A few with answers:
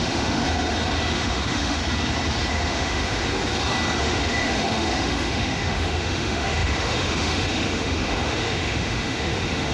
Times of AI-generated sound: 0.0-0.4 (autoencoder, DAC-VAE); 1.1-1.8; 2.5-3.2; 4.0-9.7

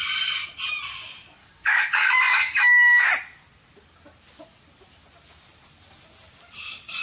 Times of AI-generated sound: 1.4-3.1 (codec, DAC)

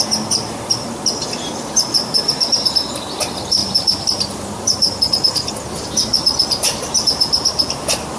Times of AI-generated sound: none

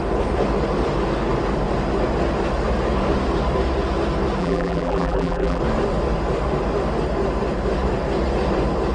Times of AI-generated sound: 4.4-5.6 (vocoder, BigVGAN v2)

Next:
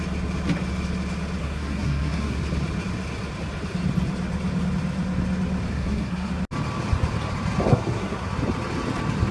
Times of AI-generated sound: 1.4-2.4 (codec, SNAC); 5.7-6.3; 7.7-8.3

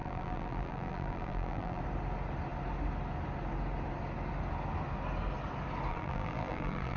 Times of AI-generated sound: 0.0-1.8 (vocoder, BigVGAN v2); 5.9-7.0